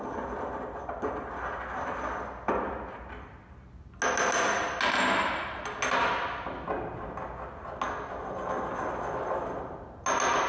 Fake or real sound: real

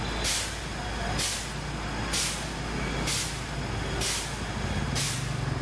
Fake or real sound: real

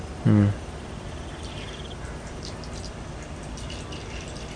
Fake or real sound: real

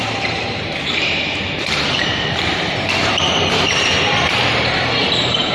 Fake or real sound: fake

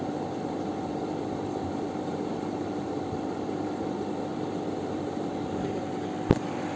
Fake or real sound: fake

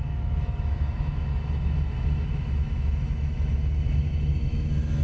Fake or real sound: fake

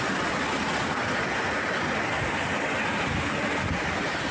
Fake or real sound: real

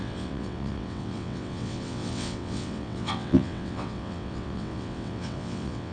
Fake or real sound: fake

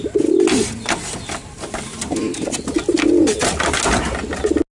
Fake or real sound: real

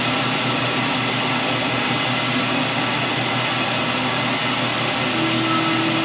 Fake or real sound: real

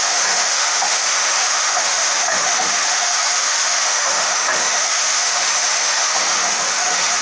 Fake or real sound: fake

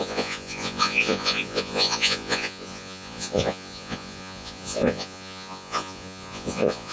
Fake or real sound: fake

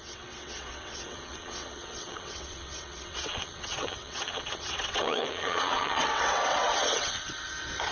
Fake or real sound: fake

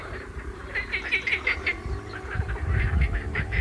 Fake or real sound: real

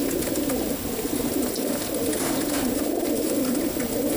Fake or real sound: real